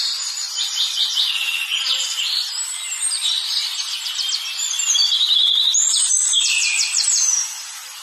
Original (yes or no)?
no